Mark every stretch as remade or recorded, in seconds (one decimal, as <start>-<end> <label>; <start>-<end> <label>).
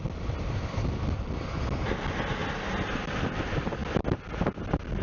0.0-5.0 recorded